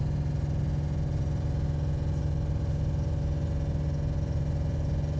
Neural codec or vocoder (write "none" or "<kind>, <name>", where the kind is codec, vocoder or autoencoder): none